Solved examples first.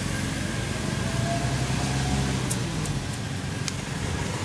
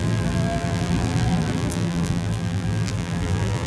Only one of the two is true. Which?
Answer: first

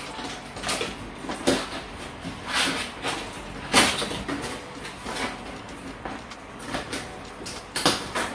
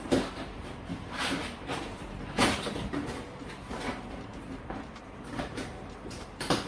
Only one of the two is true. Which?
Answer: first